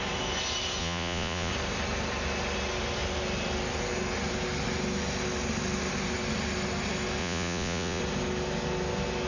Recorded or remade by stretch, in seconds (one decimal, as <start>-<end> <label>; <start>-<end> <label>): 0.0-0.8 recorded; 0.8-1.5 remade; 1.5-7.2 recorded; 7.2-8.0 remade; 8.0-9.3 recorded